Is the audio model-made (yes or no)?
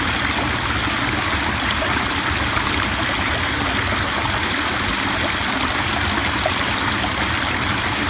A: no